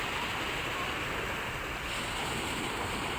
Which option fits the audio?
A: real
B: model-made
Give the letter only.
A